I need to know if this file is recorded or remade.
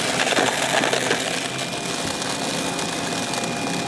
recorded